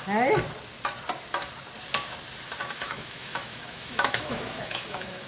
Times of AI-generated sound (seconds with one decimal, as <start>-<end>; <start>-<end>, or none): 2.6-5.3